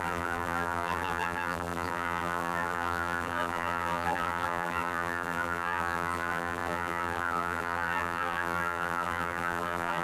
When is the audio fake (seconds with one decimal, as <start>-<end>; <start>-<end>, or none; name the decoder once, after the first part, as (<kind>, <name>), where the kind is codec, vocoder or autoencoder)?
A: 0.0-10.0 (vocoder, BigVGAN v2)